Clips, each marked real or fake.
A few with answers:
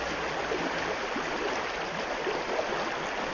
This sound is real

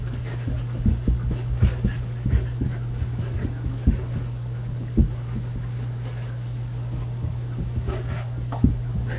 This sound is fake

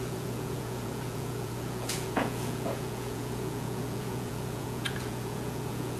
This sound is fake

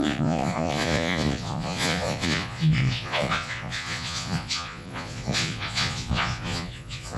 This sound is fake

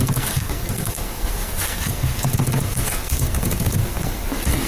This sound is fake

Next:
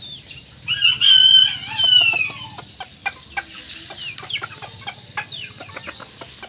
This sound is real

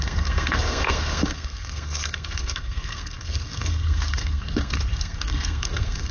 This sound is fake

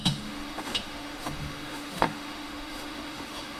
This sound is fake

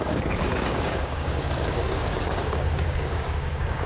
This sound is fake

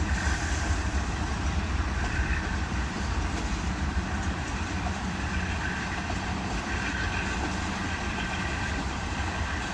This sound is fake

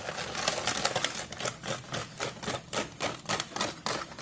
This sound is real